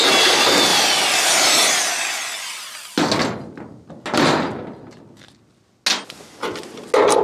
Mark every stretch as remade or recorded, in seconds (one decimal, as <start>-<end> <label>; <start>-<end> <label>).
0.0-0.7 recorded; 0.7-1.9 remade; 1.9-7.2 recorded